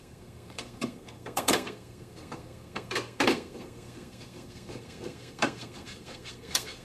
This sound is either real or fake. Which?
fake